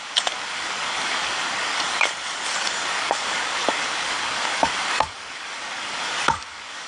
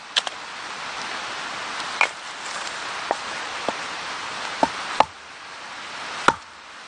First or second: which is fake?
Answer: first